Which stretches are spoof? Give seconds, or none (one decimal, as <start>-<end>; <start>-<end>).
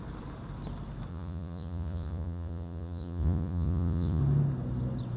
1.1-4.2